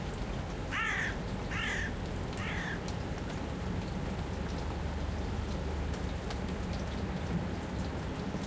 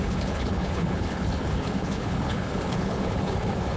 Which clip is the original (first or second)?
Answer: first